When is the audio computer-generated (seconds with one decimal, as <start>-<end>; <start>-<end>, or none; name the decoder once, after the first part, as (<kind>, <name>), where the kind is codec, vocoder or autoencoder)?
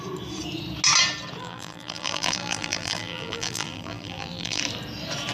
1.4-4.6 (vocoder, BigVGAN v2)